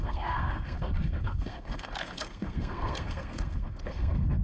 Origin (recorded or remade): remade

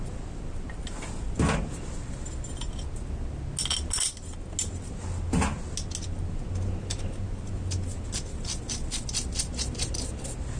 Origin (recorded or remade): recorded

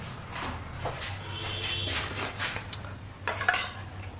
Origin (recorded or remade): recorded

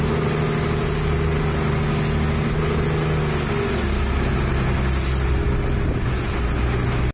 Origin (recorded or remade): recorded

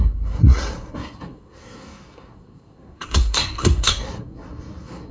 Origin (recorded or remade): remade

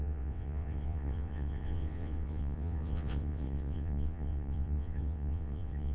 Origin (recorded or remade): remade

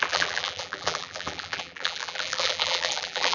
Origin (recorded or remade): remade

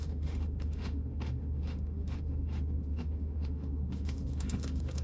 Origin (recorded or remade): remade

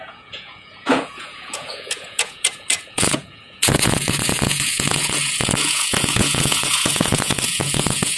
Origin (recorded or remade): remade